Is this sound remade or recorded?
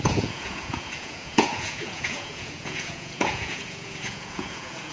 remade